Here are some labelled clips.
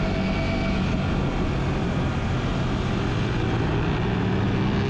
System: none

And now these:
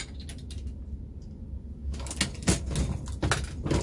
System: none